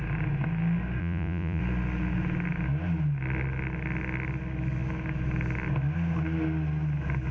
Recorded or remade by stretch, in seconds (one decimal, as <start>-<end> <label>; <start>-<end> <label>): 0.0-1.0 recorded; 1.0-1.6 remade; 1.6-7.3 recorded